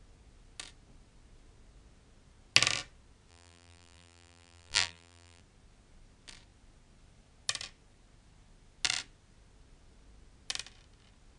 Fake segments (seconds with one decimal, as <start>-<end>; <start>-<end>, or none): 3.3-5.4